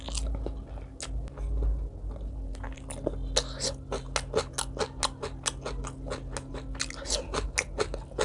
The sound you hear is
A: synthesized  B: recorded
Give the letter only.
B